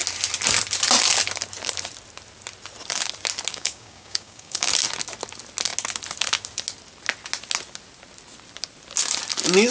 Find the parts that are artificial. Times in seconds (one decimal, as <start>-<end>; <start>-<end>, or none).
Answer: 3.5-4.7